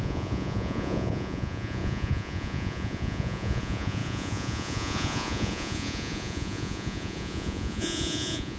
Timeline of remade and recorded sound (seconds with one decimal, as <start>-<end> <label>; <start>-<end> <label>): 0.0-8.6 remade